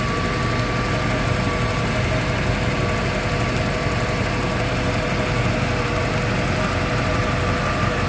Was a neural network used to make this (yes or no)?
no